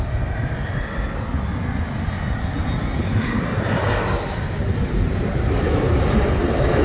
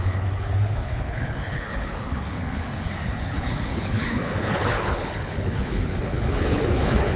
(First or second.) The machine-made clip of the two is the second